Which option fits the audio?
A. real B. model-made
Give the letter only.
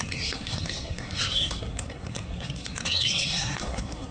B